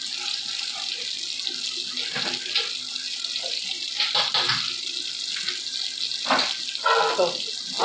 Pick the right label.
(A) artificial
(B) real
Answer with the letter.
B